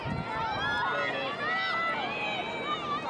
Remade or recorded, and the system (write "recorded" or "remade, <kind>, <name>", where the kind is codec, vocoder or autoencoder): recorded